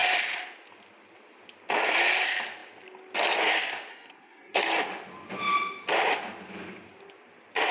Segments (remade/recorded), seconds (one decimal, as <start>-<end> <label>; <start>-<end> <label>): 0.0-3.9 recorded; 3.9-4.6 remade; 4.6-7.7 recorded

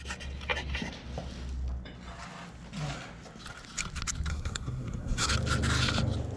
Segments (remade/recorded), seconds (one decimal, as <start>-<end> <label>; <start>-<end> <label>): 0.0-4.3 recorded; 4.3-5.3 remade; 5.3-6.4 recorded

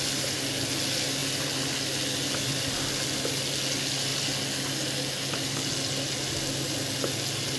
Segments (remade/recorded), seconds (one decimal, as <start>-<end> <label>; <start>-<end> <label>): 0.0-7.6 recorded